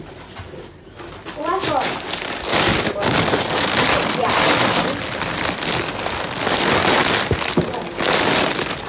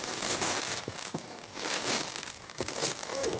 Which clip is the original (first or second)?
first